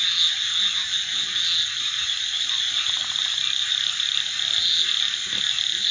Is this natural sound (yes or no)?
yes